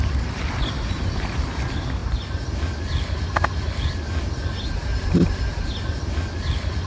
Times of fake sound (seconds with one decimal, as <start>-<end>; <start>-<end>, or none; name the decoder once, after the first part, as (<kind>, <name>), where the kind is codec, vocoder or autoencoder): 0.0-2.0 (vocoder, BigVGAN v2); 5.5-6.9